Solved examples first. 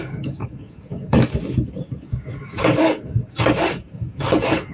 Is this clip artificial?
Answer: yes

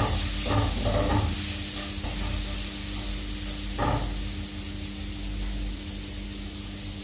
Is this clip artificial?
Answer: no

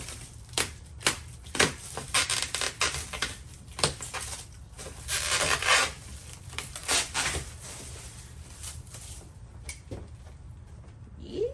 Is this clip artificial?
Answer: yes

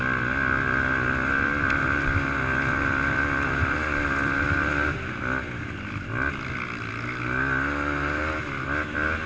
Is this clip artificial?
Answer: no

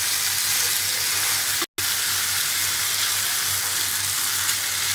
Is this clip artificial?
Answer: no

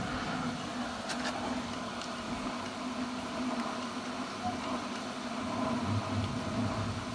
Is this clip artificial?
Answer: no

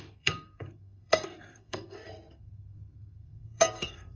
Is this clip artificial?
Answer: yes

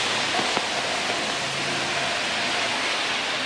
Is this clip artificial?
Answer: no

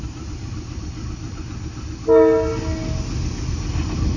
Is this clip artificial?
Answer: no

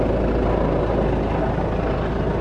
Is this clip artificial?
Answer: no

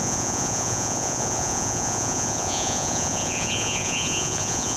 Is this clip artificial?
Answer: yes